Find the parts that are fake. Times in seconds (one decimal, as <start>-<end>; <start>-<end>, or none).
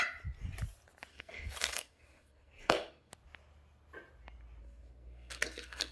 1.1-3.1; 4.6-5.9